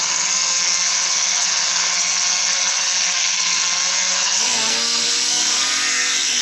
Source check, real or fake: fake